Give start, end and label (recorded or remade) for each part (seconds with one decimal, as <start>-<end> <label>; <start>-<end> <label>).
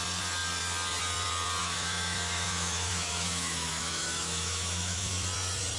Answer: 0.0-1.6 recorded; 1.6-5.1 remade; 5.1-5.8 recorded